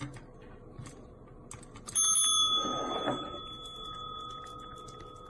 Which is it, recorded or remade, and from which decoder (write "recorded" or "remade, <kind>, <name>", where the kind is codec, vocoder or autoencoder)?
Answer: recorded